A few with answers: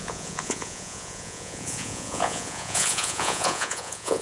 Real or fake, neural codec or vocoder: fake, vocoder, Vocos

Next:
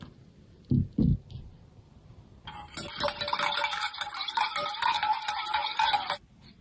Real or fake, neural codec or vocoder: real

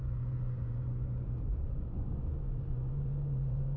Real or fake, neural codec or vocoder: fake, vocoder, Vocos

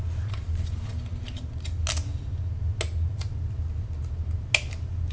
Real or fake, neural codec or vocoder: real